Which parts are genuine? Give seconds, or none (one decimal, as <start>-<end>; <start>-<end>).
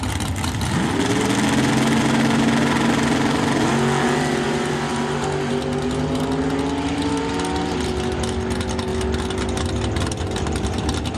0.0-11.2